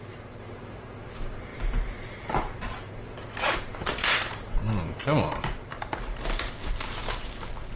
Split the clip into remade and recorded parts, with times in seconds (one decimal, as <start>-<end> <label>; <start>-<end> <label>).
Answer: 0.0-7.8 remade